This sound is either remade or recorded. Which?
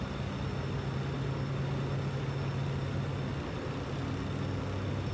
recorded